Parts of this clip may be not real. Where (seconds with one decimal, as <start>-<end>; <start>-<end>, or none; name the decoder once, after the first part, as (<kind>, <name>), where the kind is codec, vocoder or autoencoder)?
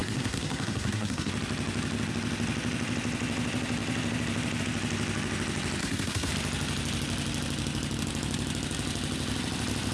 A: 0.0-1.3 (codec, SNAC); 5.8-6.3